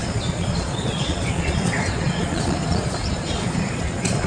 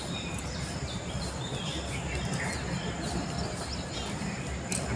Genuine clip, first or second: second